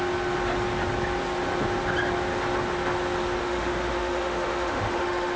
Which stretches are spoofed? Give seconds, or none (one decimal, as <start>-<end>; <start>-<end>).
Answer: 3.4-5.4